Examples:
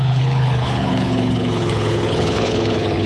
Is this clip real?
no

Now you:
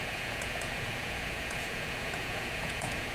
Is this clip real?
no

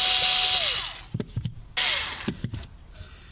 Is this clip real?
yes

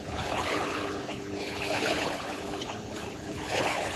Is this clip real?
no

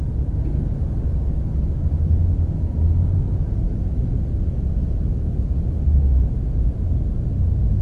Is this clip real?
yes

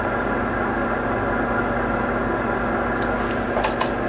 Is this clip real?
yes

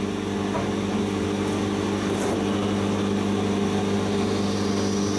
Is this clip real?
yes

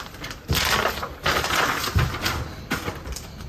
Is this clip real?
yes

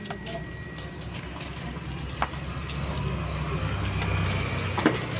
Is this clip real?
yes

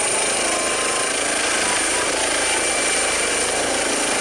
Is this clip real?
yes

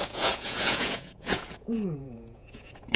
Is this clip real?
no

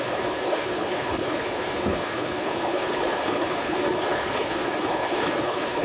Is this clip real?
no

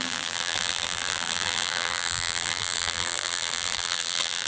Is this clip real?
no